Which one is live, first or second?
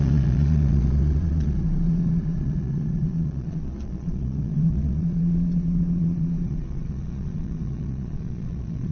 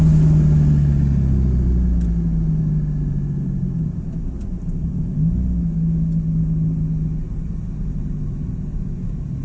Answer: second